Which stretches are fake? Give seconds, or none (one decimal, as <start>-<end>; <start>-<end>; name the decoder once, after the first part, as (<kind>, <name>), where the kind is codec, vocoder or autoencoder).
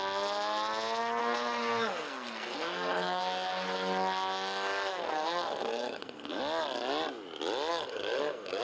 1.2-3.2 (codec, SNAC); 4.9-6.4; 7.7-8.6